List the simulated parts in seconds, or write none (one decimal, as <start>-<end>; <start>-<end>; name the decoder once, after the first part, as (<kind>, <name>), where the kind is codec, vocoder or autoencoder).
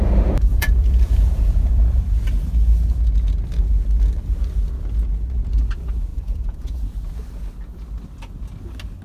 0.5-2.0 (vocoder, Vocos); 6.1-6.8